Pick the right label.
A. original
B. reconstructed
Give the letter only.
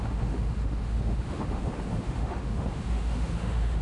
B